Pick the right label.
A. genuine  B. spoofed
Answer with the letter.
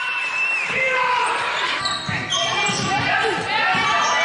B